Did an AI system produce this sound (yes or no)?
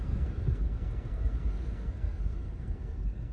yes